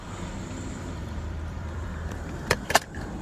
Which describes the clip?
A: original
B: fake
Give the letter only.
B